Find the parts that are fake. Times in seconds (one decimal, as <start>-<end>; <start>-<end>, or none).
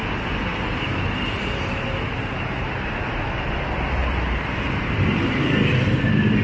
0.5-2.9; 4.0-6.4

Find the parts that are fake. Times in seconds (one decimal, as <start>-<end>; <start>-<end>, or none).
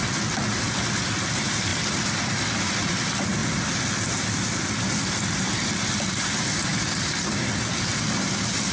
0.0-3.4; 6.3-8.7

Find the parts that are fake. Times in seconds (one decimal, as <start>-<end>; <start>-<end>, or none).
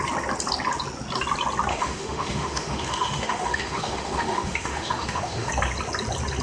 1.7-5.5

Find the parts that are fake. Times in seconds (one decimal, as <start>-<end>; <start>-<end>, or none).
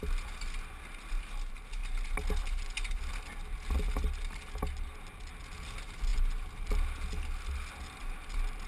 none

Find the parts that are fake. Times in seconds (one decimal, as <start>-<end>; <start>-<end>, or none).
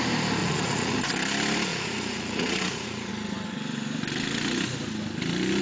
0.4-1.1; 1.7-3.1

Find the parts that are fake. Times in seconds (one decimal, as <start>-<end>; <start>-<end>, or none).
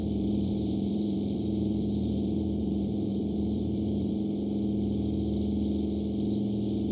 0.0-4.1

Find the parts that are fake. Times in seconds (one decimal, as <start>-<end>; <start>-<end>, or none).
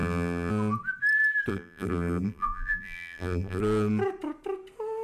0.0-0.5; 1.5-3.6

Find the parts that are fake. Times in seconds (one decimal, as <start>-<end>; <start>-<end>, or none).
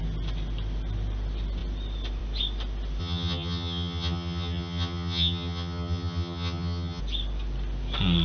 3.0-7.0